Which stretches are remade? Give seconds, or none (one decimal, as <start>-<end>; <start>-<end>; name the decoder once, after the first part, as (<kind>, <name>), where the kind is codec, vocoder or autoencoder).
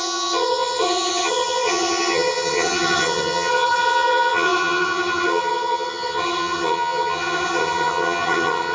0.0-8.7 (vocoder, HiFi-GAN)